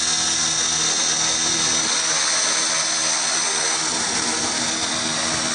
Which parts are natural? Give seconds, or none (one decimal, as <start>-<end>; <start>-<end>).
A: 0.0-3.9; 4.6-5.5